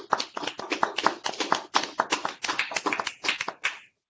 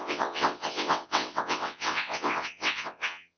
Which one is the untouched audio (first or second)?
first